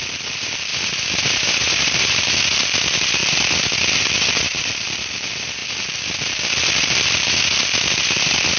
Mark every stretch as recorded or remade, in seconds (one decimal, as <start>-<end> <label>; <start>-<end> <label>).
0.0-0.7 recorded; 0.7-2.2 remade; 2.2-8.6 recorded